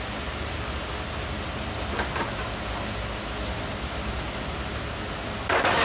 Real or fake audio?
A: real